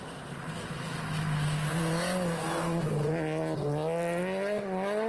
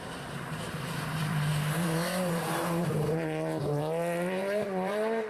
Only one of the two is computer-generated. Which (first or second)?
second